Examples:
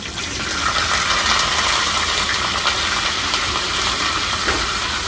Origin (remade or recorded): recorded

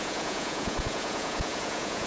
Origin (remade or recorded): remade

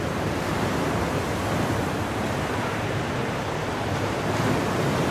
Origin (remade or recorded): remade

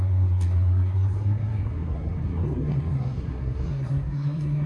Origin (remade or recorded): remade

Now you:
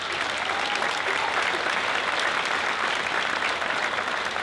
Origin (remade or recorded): recorded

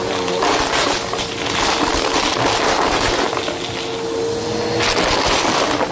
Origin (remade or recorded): recorded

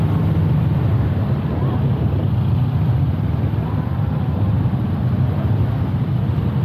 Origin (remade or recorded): recorded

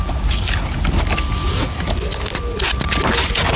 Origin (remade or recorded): recorded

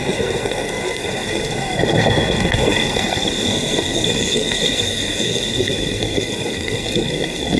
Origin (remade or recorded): remade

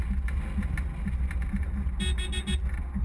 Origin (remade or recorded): recorded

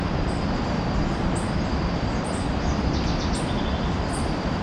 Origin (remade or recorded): recorded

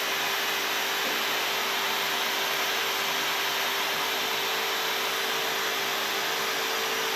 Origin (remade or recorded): recorded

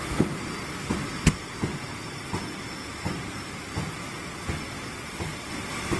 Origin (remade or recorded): recorded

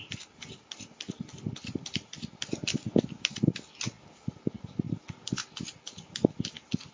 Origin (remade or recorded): recorded